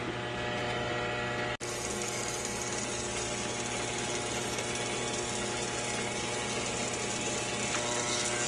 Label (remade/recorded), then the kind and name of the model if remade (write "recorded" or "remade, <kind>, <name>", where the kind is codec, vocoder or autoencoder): recorded